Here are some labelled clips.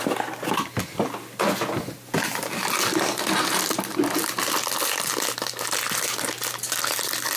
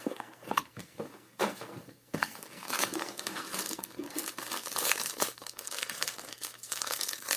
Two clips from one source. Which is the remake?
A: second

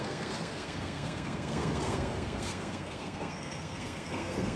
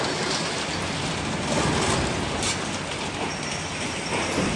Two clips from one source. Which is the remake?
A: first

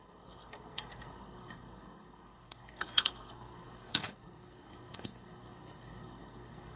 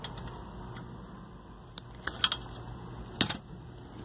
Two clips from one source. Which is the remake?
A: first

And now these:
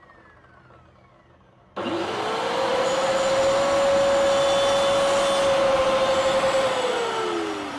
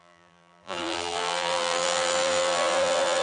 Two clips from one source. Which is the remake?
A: second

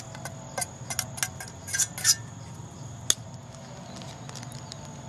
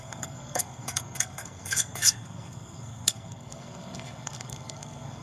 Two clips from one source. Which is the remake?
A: second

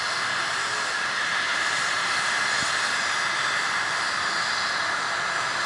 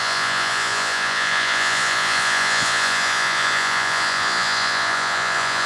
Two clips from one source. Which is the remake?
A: second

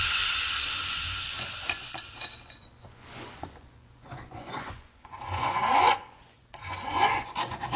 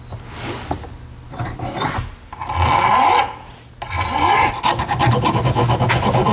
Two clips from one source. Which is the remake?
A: first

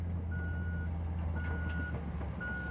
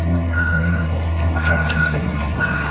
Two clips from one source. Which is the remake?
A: second